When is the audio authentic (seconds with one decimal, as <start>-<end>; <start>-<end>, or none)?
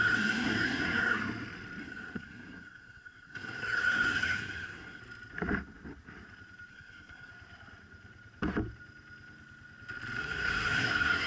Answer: 1.2-1.8; 5.0-6.7; 7.3-10.2